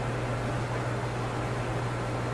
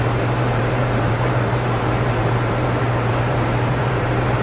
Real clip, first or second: first